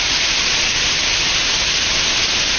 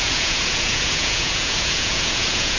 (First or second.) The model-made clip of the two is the second